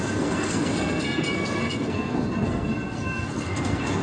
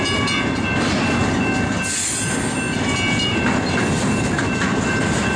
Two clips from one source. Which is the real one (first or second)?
second